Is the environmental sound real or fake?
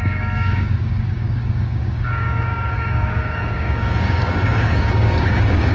fake